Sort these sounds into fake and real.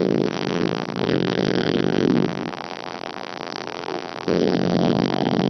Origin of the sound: fake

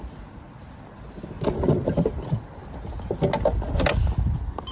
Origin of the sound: real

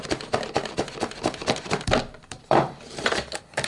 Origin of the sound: fake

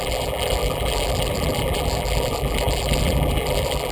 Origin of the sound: fake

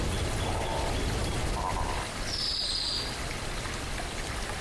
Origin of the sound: real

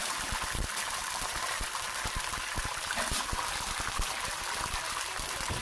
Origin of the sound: fake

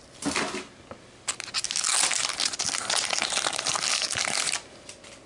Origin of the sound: real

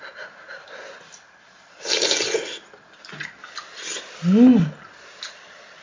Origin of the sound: real